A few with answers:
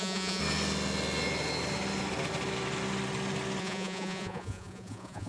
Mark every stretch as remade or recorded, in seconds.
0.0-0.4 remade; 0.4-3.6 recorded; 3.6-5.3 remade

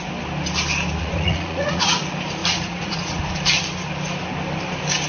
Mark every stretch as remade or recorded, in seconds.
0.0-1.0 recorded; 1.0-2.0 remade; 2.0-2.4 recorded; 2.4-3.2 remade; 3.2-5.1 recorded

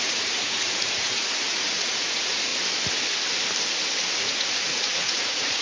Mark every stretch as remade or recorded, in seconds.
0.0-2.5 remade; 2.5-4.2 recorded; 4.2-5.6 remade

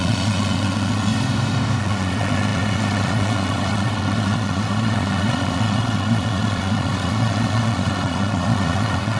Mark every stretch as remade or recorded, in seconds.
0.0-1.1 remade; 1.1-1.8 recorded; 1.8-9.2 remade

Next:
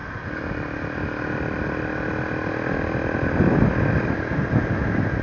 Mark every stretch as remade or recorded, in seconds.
0.0-5.2 recorded

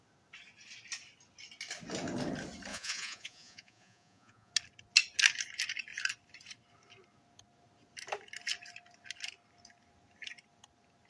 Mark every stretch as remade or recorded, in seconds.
0.0-2.7 recorded; 2.7-4.5 remade; 4.5-11.1 recorded

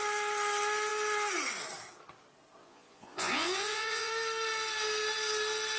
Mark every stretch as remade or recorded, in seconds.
0.0-2.6 recorded; 2.6-4.1 remade; 4.1-5.8 recorded